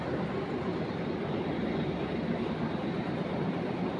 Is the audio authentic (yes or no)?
no